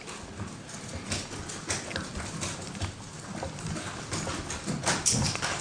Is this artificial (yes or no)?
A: no